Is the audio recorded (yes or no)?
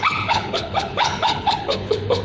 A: no